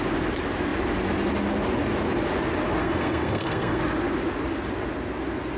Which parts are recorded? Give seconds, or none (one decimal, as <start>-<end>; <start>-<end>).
0.0-2.8; 3.8-5.6